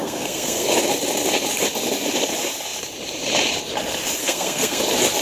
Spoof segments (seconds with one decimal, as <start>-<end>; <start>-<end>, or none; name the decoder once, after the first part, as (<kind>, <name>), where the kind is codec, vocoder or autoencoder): 0.0-0.7 (codec, SNAC); 4.2-4.8